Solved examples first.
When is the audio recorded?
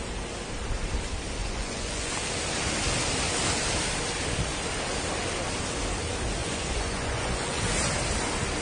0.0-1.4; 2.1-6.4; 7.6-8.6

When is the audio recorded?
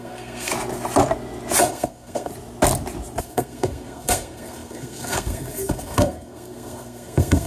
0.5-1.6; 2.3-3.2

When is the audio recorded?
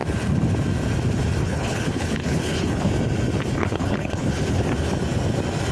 0.0-1.4; 2.9-3.5; 4.6-5.7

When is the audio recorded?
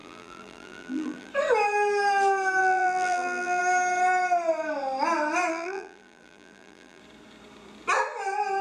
1.3-2.6; 3.6-5.5; 7.0-8.6